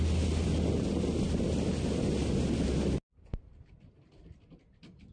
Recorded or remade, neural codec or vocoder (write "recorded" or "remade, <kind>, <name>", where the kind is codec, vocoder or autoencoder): recorded